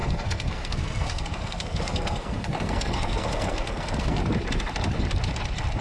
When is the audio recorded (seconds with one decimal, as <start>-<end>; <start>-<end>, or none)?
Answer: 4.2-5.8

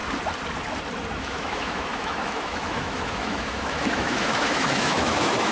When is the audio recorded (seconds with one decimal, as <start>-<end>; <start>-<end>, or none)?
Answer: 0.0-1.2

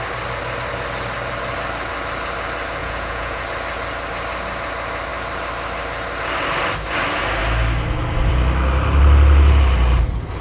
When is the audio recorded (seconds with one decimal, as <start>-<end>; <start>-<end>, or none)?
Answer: 0.0-2.8; 3.4-10.4

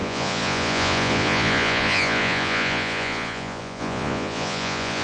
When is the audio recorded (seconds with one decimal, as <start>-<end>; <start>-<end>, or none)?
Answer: none

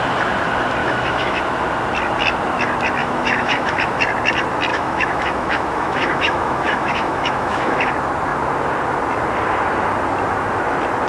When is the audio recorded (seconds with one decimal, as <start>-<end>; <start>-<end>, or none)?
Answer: 0.0-0.8; 1.4-3.0; 4.0-4.7; 7.9-11.1